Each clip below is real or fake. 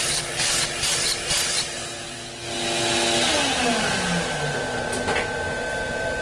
real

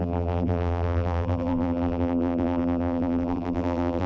fake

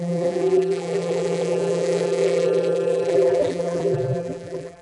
fake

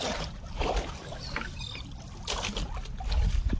real